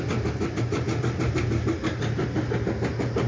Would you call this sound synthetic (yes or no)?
no